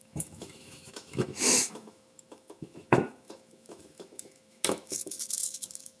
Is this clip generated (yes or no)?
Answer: yes